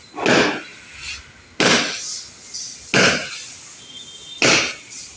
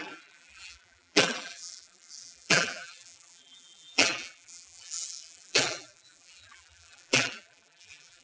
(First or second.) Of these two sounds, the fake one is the second